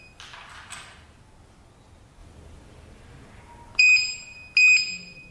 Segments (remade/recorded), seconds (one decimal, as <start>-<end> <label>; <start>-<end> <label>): 0.0-5.3 recorded